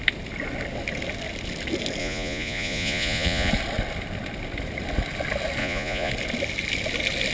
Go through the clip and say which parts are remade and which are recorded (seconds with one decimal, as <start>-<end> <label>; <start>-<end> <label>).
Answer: 0.0-2.0 recorded; 2.0-3.5 remade; 3.5-5.6 recorded; 5.6-6.1 remade; 6.1-7.3 recorded